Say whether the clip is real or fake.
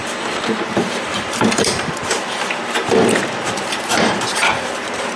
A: fake